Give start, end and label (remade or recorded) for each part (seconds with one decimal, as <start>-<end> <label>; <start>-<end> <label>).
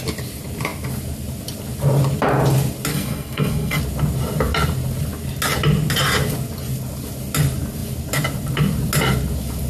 0.0-2.9 recorded; 2.9-3.8 remade; 3.8-9.7 recorded